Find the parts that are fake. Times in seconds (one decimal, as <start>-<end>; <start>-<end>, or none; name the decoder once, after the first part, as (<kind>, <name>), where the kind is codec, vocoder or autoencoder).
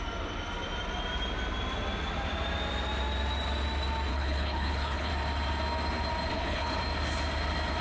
4.1-5.1 (codec, HILCodec); 6.3-6.8